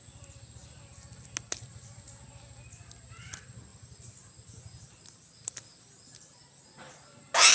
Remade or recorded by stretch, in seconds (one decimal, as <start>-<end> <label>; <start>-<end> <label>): 0.0-3.7 recorded; 3.7-6.6 remade; 6.6-7.5 recorded